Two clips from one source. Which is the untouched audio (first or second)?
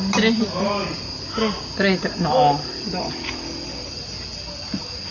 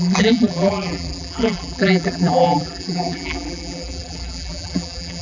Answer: first